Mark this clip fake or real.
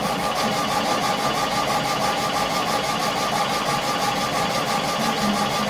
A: real